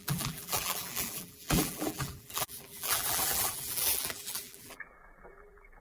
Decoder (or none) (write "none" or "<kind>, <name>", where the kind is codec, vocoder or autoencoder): vocoder, BigVGAN v2